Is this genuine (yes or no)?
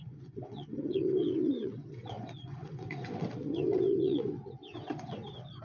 no